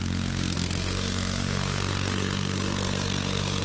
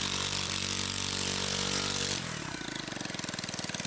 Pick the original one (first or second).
second